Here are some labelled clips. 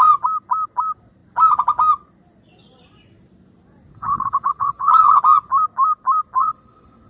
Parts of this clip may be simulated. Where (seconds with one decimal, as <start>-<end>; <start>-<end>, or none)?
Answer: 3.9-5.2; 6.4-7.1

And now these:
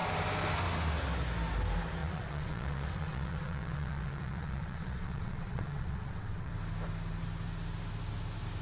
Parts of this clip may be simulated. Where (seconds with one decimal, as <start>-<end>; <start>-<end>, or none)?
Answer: 2.0-6.5

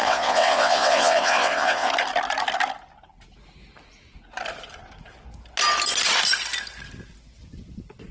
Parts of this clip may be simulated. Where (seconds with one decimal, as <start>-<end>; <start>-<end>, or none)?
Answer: 0.0-1.9